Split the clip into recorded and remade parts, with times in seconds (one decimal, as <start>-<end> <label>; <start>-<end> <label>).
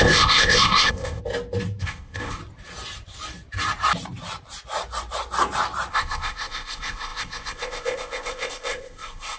0.0-1.2 remade; 1.2-1.8 recorded; 1.8-2.4 remade; 2.4-5.9 recorded; 5.9-9.4 remade